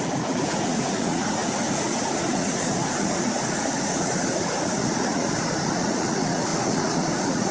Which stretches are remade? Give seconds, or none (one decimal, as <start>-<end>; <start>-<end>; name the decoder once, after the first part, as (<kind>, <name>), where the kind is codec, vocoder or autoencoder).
0.0-7.5 (vocoder, Vocos)